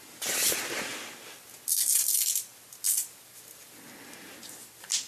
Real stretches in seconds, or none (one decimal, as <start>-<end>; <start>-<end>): 0.0-5.1